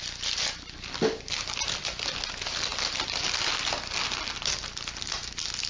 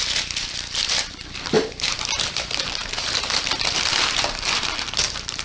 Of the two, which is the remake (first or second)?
second